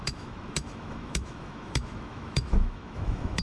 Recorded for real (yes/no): no